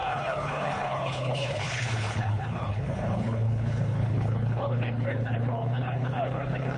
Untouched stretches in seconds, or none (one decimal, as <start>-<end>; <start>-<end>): none